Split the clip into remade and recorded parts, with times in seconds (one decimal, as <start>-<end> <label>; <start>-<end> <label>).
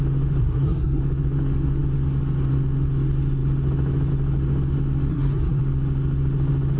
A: 0.0-0.4 recorded; 0.4-1.0 remade; 1.0-5.1 recorded; 5.1-5.6 remade; 5.6-6.8 recorded